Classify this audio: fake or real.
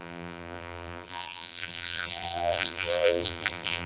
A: fake